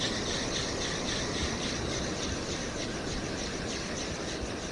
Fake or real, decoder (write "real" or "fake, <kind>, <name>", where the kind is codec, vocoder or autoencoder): real